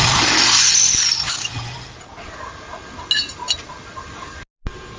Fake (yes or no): no